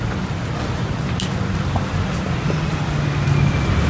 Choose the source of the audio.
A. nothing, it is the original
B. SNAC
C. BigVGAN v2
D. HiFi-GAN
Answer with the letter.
A